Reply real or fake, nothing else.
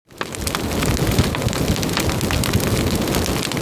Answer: real